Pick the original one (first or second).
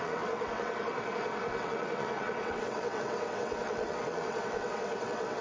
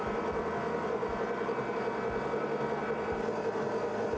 second